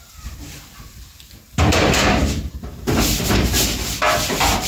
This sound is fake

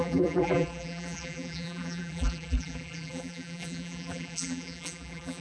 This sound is fake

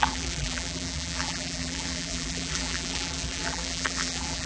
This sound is fake